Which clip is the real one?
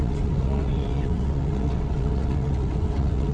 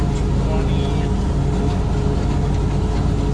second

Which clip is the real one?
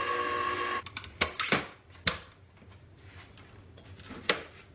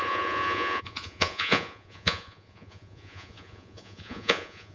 first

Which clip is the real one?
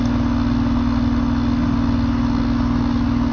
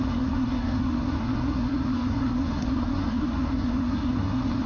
first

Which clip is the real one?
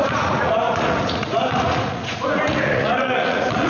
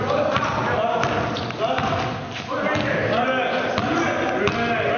second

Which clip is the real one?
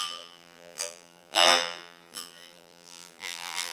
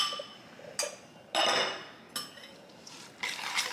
second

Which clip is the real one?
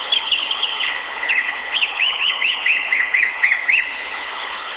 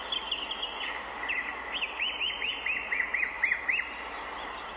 second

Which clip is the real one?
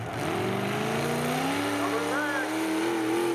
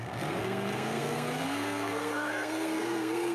first